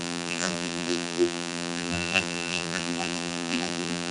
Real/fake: fake